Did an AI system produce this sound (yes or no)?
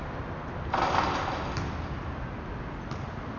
no